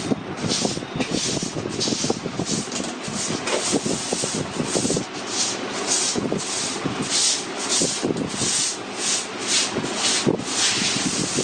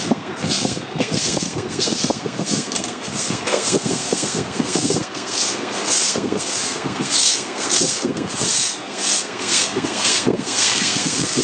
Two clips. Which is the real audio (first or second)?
first